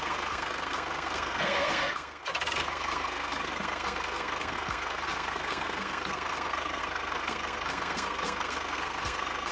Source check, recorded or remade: remade